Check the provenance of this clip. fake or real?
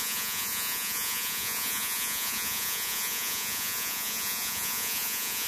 fake